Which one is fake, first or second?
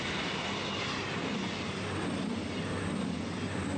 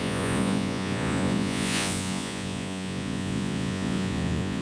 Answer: second